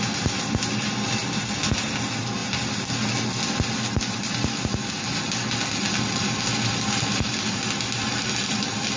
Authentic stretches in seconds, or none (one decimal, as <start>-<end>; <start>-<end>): 0.0-9.0

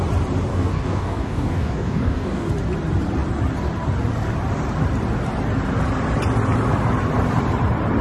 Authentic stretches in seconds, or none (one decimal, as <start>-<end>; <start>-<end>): 0.0-0.5; 2.5-8.0

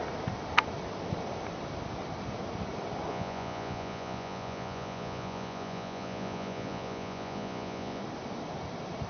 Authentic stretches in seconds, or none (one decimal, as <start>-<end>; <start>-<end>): 0.0-3.1; 8.0-9.1

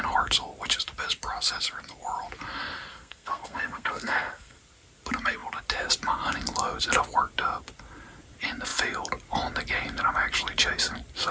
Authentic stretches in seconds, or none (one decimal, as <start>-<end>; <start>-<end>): 0.0-2.9; 4.6-11.3

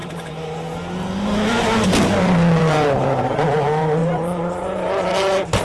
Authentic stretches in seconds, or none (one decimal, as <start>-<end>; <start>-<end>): 0.0-2.2

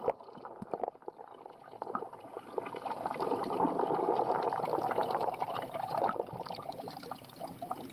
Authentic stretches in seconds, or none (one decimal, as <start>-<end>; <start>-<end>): 0.0-5.0; 7.2-7.9